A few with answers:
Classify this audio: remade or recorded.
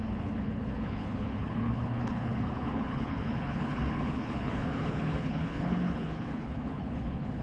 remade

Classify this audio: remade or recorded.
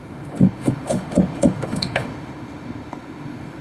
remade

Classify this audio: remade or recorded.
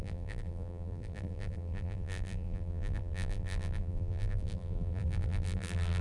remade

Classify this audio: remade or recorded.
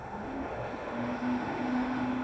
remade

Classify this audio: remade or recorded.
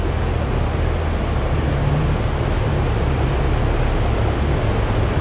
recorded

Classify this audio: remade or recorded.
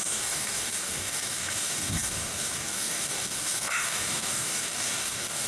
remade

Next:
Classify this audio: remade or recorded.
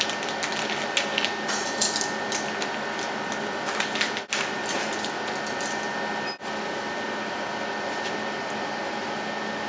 recorded